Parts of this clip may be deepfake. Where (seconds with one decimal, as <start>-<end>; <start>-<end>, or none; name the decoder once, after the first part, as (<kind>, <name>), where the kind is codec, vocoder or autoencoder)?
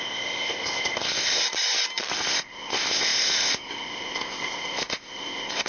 0.0-1.4 (codec, ZipCodec); 2.1-5.7